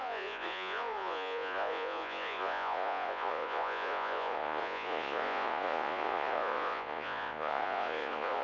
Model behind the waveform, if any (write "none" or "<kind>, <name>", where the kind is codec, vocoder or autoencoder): vocoder, Vocos